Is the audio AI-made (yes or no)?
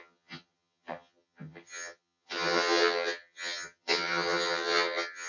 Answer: yes